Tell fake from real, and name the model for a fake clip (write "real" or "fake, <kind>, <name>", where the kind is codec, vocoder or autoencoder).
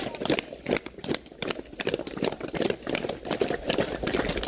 real